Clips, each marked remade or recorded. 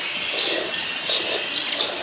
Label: remade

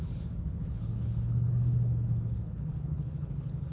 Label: remade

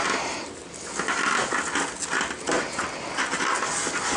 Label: recorded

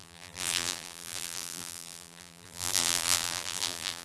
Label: remade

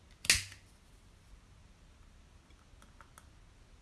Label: recorded